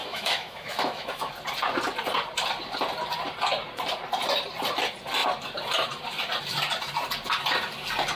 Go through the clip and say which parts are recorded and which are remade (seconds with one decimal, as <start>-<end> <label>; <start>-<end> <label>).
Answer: 0.0-1.3 remade; 1.3-8.2 recorded